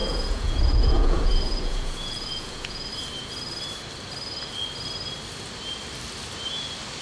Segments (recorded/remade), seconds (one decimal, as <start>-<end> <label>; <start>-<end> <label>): 0.0-2.9 remade; 2.9-7.0 recorded